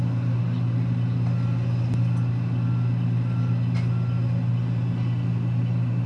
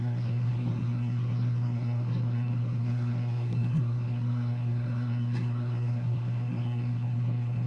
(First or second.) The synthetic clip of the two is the second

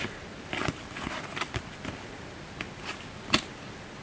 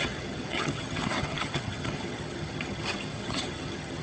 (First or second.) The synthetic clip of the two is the second